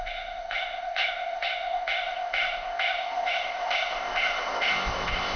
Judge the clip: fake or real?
fake